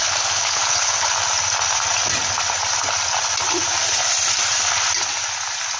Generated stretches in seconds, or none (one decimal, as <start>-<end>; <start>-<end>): 0.0-1.1